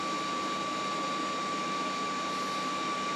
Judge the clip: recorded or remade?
recorded